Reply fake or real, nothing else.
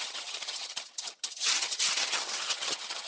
fake